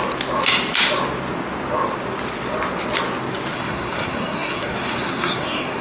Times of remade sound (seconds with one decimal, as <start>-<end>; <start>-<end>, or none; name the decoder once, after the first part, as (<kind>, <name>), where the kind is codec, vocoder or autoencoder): 3.5-5.8 (codec, SNAC)